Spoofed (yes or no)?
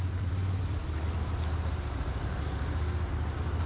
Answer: yes